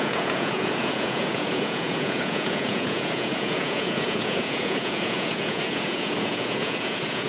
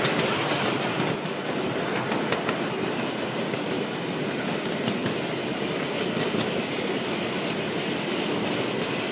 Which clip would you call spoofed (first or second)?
first